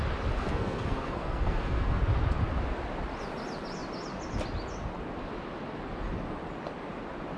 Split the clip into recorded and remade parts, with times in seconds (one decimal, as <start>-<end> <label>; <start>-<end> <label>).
0.0-0.4 recorded; 0.4-2.0 remade; 2.0-7.4 recorded